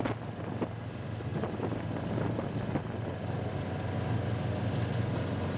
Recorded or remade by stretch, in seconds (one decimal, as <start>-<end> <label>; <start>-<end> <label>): 0.0-5.6 recorded